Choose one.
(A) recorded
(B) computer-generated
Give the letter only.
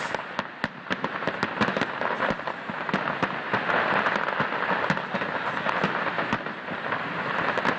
A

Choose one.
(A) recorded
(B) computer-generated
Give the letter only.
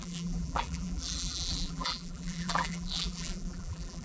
B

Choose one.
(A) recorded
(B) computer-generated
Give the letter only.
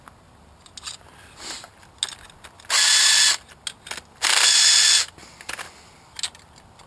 A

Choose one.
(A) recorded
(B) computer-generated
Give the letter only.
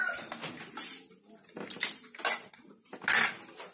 A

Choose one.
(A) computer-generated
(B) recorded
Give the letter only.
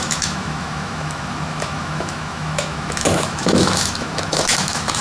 A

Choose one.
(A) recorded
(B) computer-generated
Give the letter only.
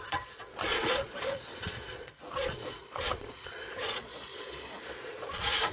B